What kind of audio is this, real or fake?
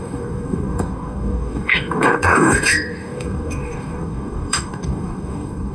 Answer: fake